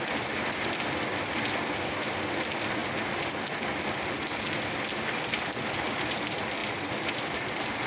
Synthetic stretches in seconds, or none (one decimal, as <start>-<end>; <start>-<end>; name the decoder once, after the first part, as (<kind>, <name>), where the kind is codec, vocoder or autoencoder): none